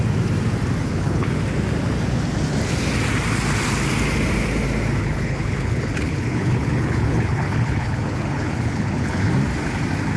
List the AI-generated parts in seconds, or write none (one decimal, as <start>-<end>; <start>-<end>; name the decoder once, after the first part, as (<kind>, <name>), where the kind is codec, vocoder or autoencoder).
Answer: 0.8-1.4 (codec, HILCodec); 5.0-9.3